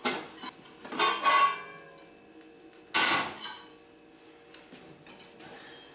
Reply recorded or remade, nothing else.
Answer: recorded